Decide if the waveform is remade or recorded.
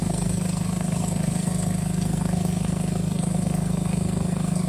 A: remade